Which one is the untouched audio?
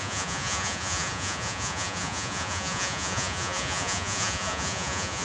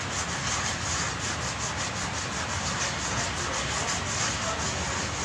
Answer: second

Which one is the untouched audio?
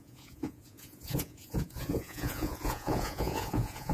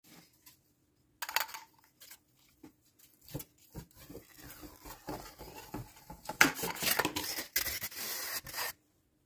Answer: second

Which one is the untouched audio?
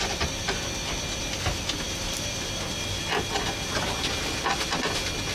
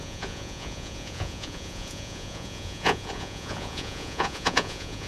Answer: first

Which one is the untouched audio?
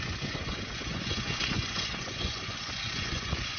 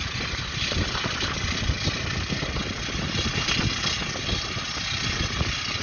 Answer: second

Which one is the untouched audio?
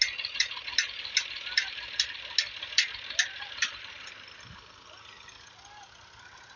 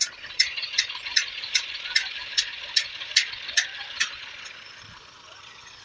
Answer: first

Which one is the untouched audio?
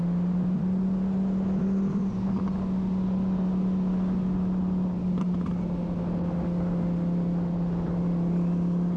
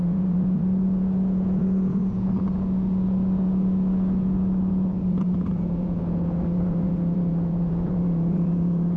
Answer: first